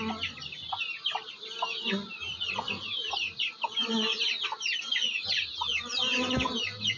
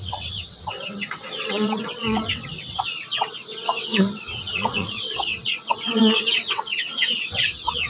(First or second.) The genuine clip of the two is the first